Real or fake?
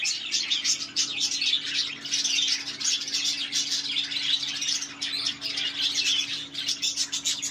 real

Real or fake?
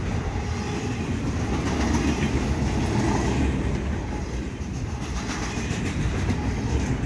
real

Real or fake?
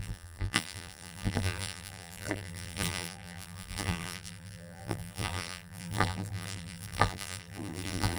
fake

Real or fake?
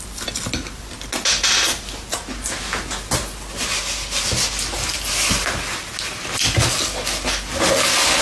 real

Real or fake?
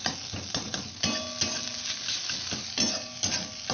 real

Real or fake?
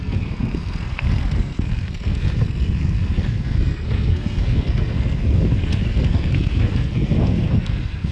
fake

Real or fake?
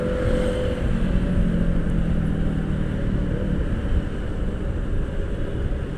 real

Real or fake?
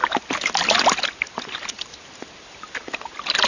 real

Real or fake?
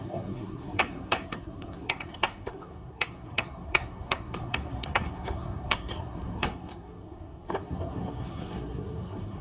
fake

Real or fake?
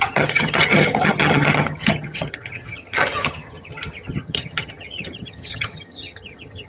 fake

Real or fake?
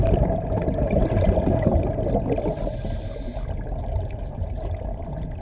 real